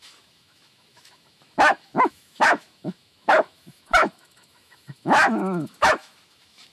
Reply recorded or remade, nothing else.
remade